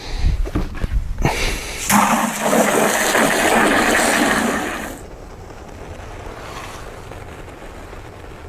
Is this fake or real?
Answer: real